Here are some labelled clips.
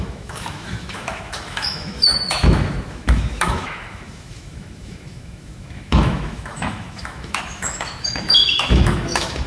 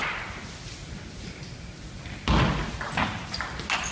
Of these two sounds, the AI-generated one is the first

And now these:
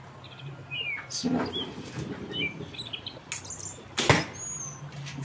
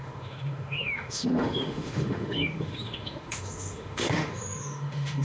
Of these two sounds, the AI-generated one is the second